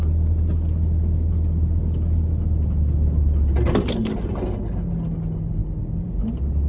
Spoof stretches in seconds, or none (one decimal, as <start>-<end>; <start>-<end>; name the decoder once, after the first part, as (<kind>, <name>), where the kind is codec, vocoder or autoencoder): none